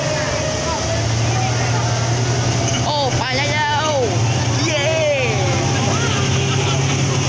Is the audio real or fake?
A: real